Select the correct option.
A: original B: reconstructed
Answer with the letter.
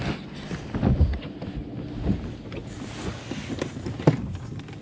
A